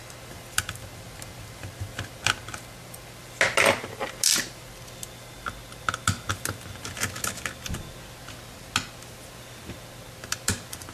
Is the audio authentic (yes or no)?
yes